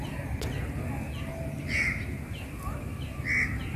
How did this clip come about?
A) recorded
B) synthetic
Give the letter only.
A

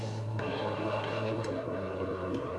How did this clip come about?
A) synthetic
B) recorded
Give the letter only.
A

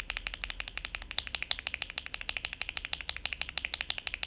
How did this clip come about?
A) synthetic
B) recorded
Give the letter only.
B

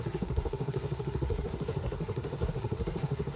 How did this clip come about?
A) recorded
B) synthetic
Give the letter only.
B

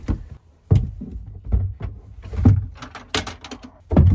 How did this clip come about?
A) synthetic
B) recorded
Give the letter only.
B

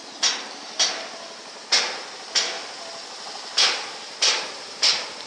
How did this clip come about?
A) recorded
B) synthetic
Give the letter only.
A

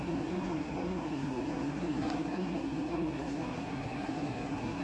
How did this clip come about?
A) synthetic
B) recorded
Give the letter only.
A